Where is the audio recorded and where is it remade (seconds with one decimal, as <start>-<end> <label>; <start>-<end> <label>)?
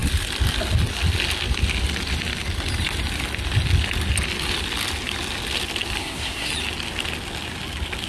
0.0-6.0 recorded; 6.0-6.5 remade; 6.5-8.1 recorded